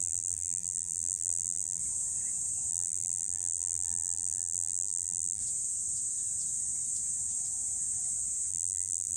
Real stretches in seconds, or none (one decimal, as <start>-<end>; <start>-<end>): 1.8-2.7; 5.4-8.5